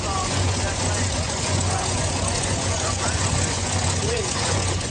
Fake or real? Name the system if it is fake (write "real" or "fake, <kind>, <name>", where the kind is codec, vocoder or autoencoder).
fake, vocoder, Vocos